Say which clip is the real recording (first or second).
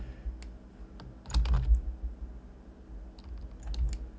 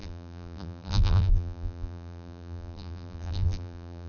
first